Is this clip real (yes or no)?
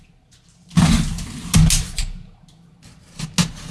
yes